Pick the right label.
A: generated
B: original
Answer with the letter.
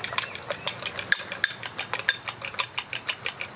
B